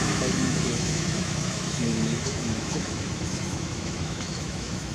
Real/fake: fake